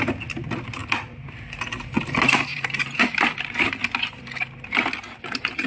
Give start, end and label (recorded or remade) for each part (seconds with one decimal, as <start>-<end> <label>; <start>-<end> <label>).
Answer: 0.0-2.5 recorded; 2.5-3.3 remade; 3.3-5.7 recorded